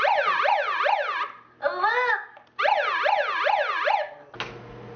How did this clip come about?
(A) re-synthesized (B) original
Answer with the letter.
B